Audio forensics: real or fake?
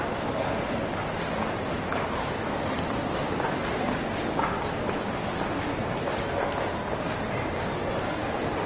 real